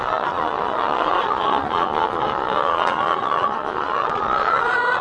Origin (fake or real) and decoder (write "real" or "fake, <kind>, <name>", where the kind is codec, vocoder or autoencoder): fake, vocoder, Vocos